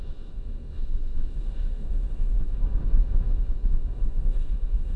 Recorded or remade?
remade